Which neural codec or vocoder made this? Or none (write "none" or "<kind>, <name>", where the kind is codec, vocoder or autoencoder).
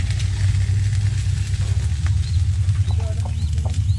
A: none